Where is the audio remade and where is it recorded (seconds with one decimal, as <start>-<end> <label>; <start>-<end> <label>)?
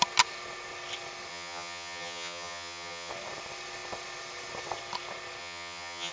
0.0-1.3 recorded; 1.3-3.1 remade; 3.1-5.4 recorded; 5.4-6.1 remade